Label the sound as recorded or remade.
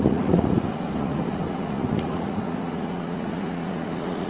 remade